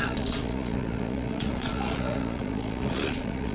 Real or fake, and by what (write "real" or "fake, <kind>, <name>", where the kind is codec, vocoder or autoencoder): fake, vocoder, Vocos